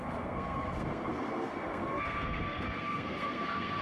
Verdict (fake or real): fake